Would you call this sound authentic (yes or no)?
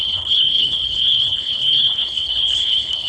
no